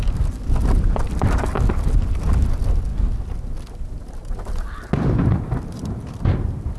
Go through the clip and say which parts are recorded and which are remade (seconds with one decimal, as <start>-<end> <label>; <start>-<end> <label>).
0.0-6.8 recorded